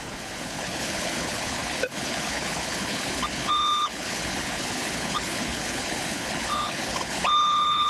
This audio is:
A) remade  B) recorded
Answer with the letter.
A